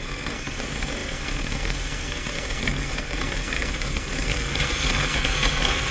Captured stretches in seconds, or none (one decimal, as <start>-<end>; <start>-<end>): none

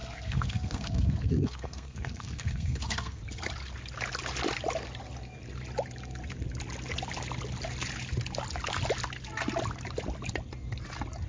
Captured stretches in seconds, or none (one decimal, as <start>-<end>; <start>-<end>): 3.2-11.3